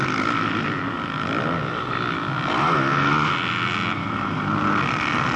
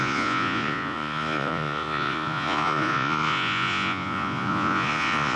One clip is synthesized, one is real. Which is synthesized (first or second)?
second